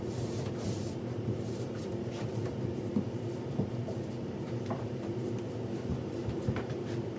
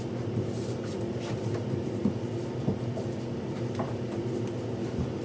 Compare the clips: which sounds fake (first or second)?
first